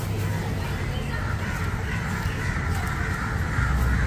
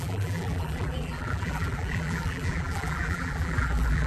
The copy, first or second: second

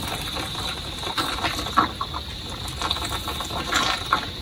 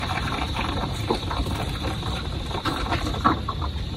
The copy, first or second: second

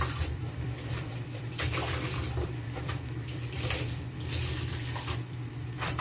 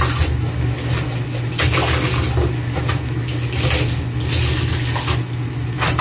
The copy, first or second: first